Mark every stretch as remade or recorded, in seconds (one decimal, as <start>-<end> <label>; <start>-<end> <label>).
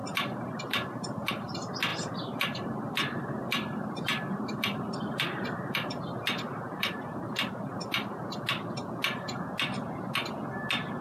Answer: 0.0-1.3 remade; 1.3-1.9 recorded; 1.9-6.0 remade; 6.0-6.5 recorded; 6.5-8.2 remade; 8.2-11.0 recorded